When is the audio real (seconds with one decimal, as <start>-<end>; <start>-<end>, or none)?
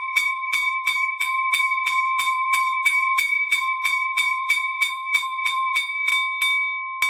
6.1-7.1